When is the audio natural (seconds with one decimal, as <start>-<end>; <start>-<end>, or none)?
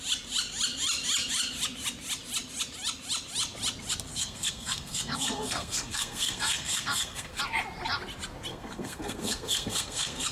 0.0-4.1; 7.4-8.5